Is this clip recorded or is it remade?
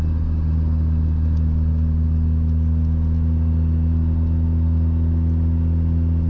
recorded